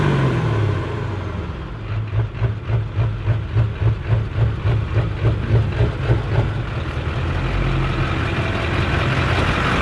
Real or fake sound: real